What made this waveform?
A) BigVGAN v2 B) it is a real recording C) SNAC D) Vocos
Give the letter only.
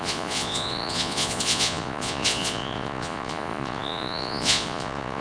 D